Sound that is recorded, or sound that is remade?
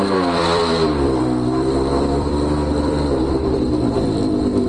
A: remade